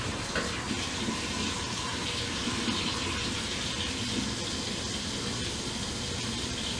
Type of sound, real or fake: real